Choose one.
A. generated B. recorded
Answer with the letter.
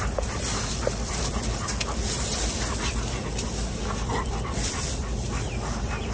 A